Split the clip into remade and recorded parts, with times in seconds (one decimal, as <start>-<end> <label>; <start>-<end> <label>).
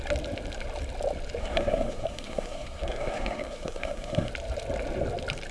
0.0-1.4 recorded; 1.4-4.3 remade; 4.3-5.5 recorded